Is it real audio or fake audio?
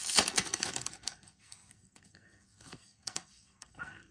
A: fake